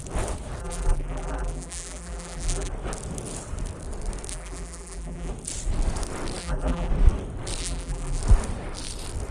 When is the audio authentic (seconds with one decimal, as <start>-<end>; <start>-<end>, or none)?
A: 0.0-0.6; 2.7-4.3; 5.3-6.4; 6.9-7.6; 8.2-9.3

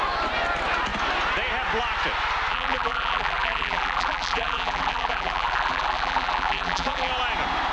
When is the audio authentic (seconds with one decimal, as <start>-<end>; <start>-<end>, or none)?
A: 0.0-2.5; 7.1-7.7

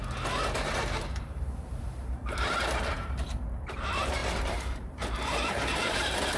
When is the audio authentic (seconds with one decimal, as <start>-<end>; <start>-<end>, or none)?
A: 0.0-0.7; 2.2-2.9

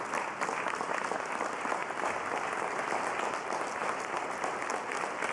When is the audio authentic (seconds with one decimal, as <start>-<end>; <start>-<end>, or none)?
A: 0.0-3.8; 4.7-5.3